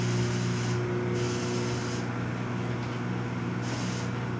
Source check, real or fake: real